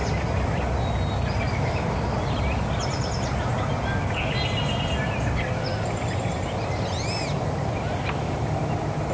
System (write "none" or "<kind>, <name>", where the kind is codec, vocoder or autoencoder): none